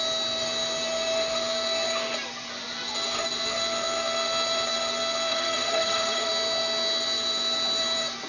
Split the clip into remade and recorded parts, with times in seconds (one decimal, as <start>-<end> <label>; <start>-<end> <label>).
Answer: 0.0-5.3 recorded; 5.3-6.3 remade; 6.3-8.3 recorded